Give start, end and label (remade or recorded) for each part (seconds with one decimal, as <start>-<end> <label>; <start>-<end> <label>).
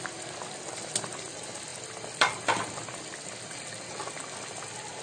0.0-5.0 recorded